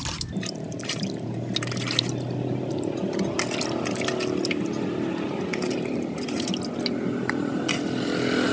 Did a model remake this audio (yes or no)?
no